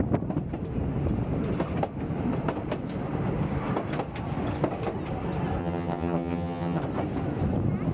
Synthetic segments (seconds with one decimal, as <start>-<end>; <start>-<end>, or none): 5.6-6.8